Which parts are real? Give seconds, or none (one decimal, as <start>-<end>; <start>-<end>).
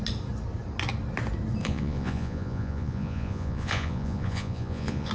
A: 0.0-1.6